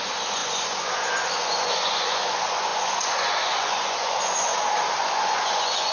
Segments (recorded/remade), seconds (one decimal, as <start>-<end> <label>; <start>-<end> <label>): 0.0-4.5 remade; 4.5-5.0 recorded; 5.0-5.9 remade